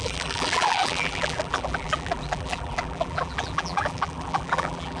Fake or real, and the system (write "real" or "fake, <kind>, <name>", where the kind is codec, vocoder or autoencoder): fake, vocoder, BigVGAN v2